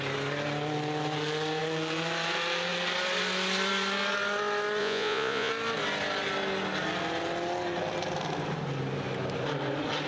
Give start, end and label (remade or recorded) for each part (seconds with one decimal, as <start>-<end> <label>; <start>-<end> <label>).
0.0-4.8 recorded; 4.8-5.5 remade; 5.5-10.1 recorded